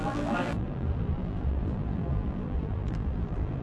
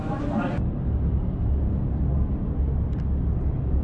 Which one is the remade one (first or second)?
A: first